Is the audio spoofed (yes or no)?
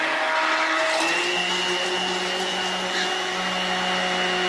no